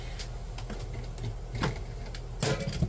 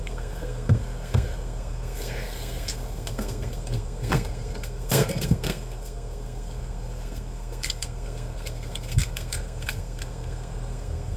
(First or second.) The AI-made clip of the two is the second